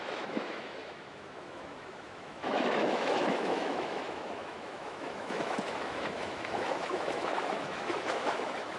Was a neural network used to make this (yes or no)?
yes